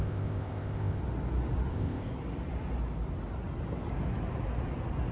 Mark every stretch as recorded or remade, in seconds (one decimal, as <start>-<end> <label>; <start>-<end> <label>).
0.0-1.0 remade; 1.0-1.7 recorded; 1.7-2.1 remade; 2.1-5.1 recorded

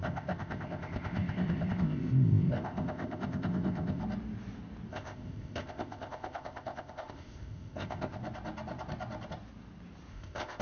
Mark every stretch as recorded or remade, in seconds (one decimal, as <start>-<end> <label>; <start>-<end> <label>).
0.0-4.0 remade; 4.0-4.9 recorded; 4.9-8.2 remade; 8.2-10.1 recorded; 10.1-10.6 remade